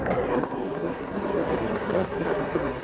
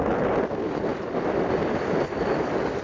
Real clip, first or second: second